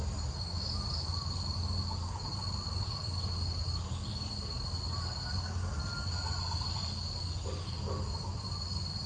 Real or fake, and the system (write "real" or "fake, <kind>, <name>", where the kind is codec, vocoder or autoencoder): fake, vocoder, BigVGAN v2